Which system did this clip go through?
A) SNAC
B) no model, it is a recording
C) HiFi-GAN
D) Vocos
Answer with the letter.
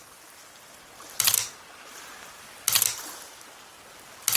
B